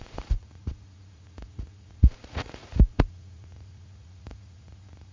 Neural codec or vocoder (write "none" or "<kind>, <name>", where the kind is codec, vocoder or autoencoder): vocoder, Vocos